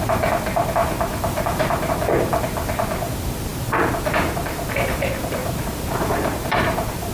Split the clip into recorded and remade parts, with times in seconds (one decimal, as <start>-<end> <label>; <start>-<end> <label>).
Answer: 0.0-0.8 recorded; 0.8-1.9 remade; 1.9-5.4 recorded; 5.4-7.1 remade